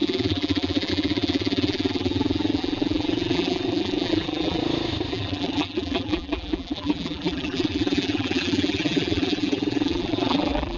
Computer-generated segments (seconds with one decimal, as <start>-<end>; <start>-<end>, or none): 0.0-4.6; 5.1-10.8